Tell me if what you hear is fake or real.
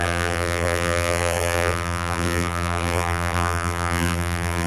fake